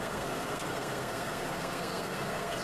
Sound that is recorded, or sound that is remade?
remade